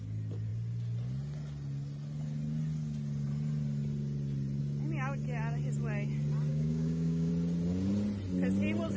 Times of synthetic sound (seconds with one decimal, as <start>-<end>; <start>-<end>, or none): 6.5-7.3